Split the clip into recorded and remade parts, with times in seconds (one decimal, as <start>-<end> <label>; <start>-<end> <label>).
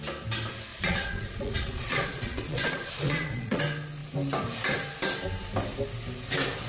0.0-0.7 recorded; 0.7-3.6 remade; 3.6-6.7 recorded